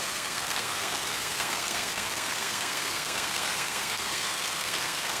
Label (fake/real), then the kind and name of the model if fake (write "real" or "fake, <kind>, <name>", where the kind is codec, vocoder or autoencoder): fake, codec, SNAC